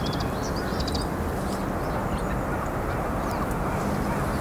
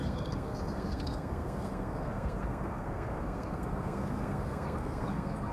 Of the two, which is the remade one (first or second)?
second